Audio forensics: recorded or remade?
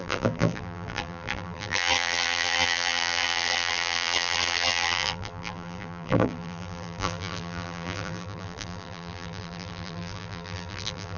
remade